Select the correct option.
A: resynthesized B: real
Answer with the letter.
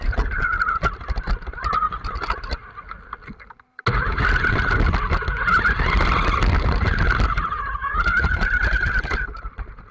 B